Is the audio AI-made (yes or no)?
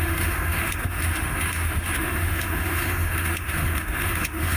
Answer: yes